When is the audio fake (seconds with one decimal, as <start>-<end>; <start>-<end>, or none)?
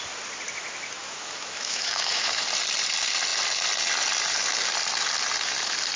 1.0-2.4